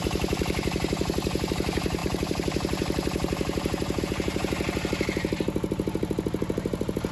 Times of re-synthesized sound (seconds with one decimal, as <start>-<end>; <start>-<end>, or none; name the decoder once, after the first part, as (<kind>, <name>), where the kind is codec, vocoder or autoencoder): 0.0-7.1 (vocoder, BigVGAN v2)